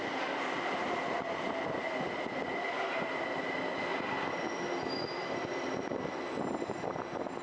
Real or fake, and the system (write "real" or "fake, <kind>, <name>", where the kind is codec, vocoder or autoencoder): real